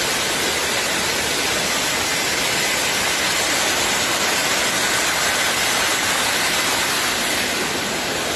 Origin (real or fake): real